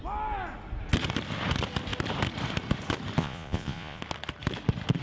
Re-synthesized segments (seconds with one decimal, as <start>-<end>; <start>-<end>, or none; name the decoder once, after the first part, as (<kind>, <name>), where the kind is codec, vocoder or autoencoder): 3.2-4.0 (vocoder, Vocos)